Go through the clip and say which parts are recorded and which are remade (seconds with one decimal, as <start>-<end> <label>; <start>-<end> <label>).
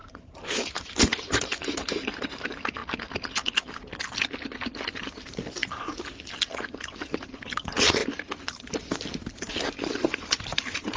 0.0-2.8 remade; 2.8-4.9 recorded; 4.9-5.6 remade; 5.6-6.8 recorded; 6.8-8.0 remade; 8.0-8.5 recorded; 8.5-11.0 remade